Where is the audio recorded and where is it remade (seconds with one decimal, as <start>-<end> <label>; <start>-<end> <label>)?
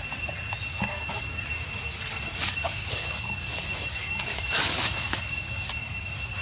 0.0-0.7 recorded; 0.7-1.4 remade; 1.4-2.1 recorded; 2.1-5.9 remade; 5.9-6.4 recorded